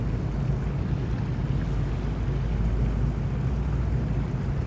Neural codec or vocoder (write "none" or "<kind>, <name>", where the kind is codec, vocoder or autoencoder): none